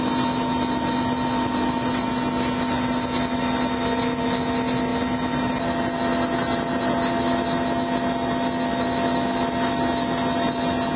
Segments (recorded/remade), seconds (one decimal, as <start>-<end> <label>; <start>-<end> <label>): 0.0-11.0 recorded